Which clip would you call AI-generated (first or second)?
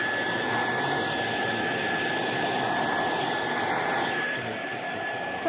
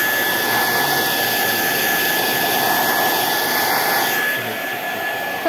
first